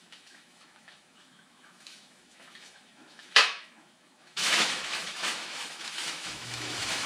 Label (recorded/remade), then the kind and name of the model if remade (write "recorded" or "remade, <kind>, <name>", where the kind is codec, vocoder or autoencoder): remade, autoencoder, DAC-VAE